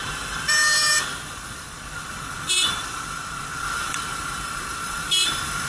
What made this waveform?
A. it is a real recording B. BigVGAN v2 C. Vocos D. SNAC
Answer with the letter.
B